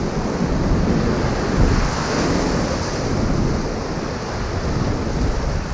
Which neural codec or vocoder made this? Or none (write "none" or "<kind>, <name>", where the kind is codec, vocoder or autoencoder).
none